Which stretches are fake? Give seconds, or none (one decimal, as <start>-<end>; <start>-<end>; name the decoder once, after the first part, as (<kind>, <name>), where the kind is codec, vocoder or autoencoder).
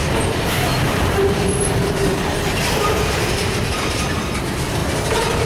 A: 0.9-4.8 (vocoder, BigVGAN v2)